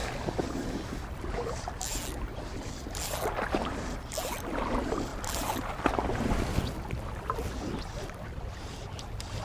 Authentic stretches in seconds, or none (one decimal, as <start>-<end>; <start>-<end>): 0.0-9.4

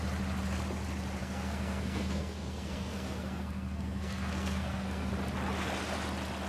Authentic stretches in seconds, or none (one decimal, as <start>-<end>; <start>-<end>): 0.0-1.2; 5.1-6.5

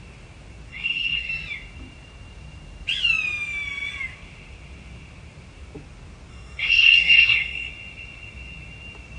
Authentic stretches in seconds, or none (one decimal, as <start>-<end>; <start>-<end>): 0.0-0.7; 1.3-6.3; 7.7-9.2

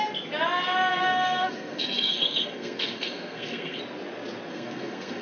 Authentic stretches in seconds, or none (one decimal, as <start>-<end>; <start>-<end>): 0.0-0.9; 3.8-4.5

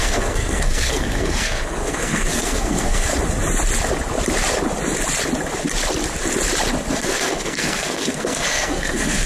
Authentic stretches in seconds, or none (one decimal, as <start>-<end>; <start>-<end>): 3.1-6.9

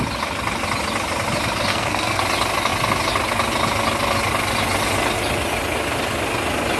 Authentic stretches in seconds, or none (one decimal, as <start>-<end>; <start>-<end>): 0.0-1.7; 2.2-6.8